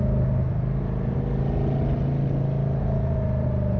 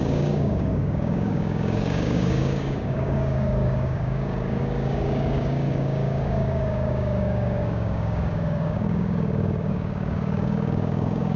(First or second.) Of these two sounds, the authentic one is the first